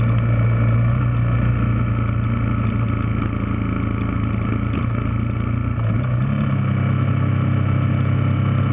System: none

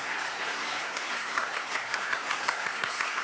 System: codec, SNAC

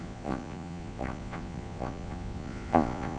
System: vocoder, Vocos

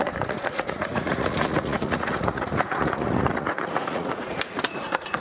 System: vocoder, Vocos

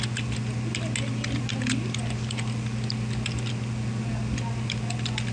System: none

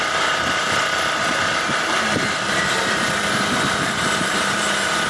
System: vocoder, BigVGAN v2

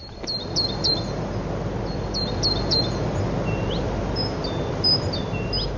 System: none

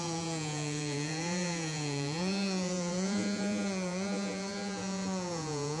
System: vocoder, Vocos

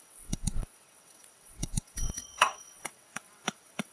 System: vocoder, WaveNeXt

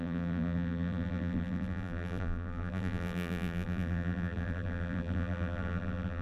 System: vocoder, BigVGAN v2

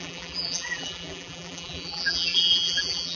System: vocoder, BigVGAN v2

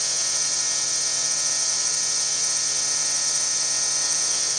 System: vocoder, WaveNeXt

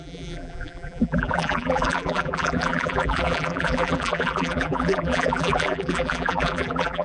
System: vocoder, BigVGAN v2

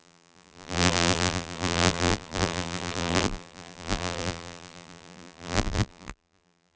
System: vocoder, BigVGAN v2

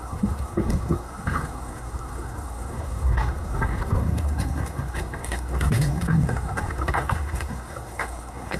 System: codec, SNAC